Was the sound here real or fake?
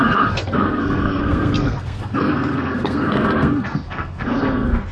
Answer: fake